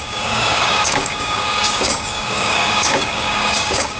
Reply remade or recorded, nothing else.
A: remade